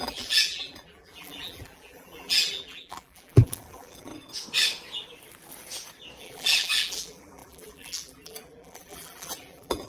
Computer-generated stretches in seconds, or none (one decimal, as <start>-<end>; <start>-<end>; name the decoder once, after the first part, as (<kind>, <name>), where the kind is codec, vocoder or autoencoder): 0.0-4.1 (vocoder, BigVGAN v2); 6.2-9.9